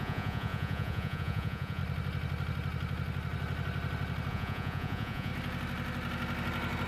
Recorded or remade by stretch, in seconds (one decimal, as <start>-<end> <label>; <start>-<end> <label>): 0.0-1.8 remade; 1.8-4.3 recorded; 4.3-5.3 remade; 5.3-6.9 recorded